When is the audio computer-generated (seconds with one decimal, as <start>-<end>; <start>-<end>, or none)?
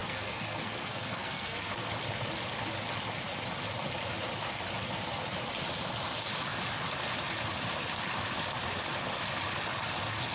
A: 0.0-1.9